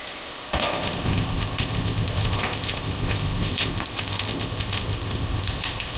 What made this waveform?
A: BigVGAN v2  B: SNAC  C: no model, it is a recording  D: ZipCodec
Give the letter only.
D